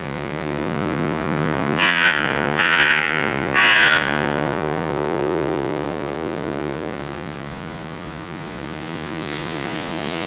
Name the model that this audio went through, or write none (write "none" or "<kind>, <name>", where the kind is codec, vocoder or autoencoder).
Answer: vocoder, Vocos